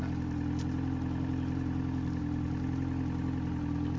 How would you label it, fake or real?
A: real